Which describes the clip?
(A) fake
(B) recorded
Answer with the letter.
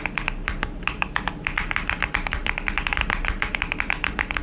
B